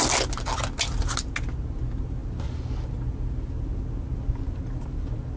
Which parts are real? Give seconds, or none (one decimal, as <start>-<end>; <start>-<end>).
0.0-5.4

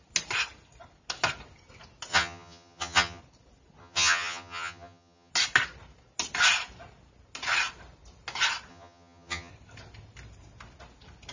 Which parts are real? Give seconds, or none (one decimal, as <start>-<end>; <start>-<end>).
0.0-2.1; 3.2-3.8; 5.3-8.7; 9.5-11.3